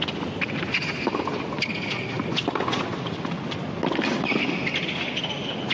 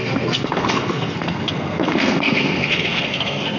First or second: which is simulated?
second